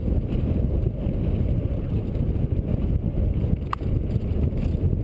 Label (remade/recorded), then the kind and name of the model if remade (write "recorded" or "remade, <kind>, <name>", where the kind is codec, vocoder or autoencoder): recorded